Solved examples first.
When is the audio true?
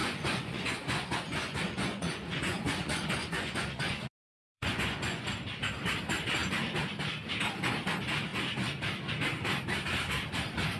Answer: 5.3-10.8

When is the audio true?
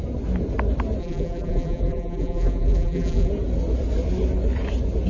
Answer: 0.0-1.0; 3.3-5.1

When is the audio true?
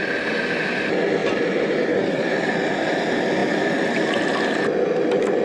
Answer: 0.0-1.2; 2.5-5.4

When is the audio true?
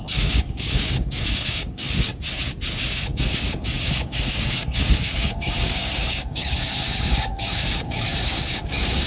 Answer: 2.1-2.9